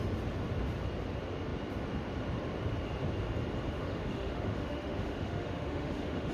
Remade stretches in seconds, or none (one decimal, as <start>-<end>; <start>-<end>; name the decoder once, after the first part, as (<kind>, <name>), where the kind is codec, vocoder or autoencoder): 3.7-6.3 (autoencoder, DAC-VAE)